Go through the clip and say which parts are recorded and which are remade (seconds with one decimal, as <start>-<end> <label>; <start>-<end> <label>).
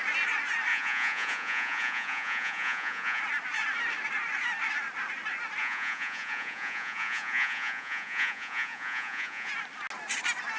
0.0-0.7 recorded; 0.7-3.2 remade; 3.2-5.6 recorded; 5.6-9.5 remade; 9.5-10.6 recorded